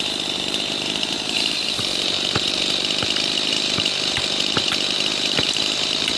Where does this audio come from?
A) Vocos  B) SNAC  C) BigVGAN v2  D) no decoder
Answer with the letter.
C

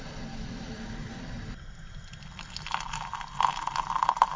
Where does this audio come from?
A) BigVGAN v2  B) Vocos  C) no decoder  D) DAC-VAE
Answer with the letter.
C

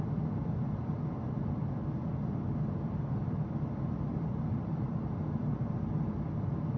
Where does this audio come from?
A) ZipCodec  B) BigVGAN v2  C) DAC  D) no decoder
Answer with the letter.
D